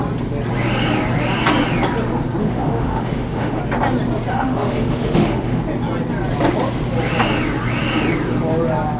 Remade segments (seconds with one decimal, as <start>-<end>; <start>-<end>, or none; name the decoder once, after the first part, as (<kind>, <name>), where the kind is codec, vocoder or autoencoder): 2.4-3.6 (autoencoder, DAC-VAE); 4.3-5.6